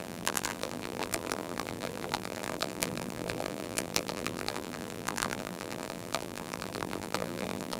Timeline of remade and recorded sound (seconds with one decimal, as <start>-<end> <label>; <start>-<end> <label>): 0.0-7.8 remade